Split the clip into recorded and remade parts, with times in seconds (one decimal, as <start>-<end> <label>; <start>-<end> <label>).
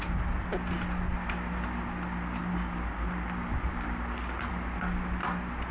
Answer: 0.0-5.7 recorded